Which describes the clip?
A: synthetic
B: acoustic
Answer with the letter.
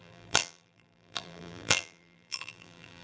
A